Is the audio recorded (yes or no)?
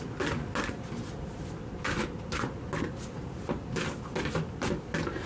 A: yes